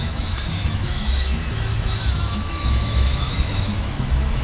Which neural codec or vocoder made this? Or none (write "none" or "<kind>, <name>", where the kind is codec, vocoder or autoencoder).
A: autoencoder, DAC-VAE